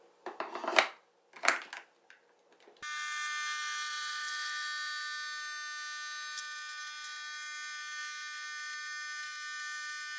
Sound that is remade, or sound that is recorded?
recorded